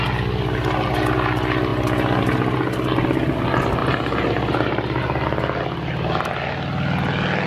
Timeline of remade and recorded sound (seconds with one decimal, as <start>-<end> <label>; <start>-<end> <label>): 0.0-3.8 recorded; 3.8-5.0 remade; 5.0-7.5 recorded

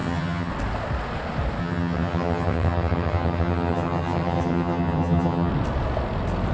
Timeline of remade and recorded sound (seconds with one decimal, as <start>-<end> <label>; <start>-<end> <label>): 0.0-0.5 remade; 0.5-1.6 recorded; 1.6-5.5 remade; 5.5-6.5 recorded

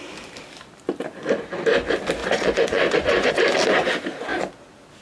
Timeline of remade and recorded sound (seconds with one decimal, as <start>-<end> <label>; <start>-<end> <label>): 0.0-2.2 recorded; 2.2-3.3 remade; 3.3-5.0 recorded

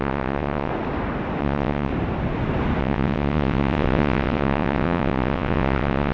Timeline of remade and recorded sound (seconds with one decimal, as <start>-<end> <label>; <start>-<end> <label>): 0.0-0.7 remade; 0.7-1.4 recorded; 1.4-1.9 remade; 1.9-2.8 recorded; 2.8-6.1 remade

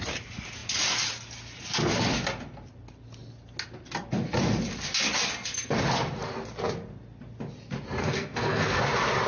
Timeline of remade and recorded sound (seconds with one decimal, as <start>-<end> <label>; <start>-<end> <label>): 0.0-8.0 recorded; 8.0-8.8 remade; 8.8-9.3 recorded